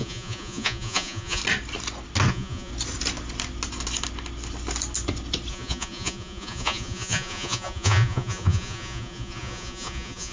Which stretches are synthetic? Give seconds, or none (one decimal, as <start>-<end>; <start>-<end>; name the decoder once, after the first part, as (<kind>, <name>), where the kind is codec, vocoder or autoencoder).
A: 0.0-1.4 (vocoder, Vocos); 2.3-2.7; 5.5-10.3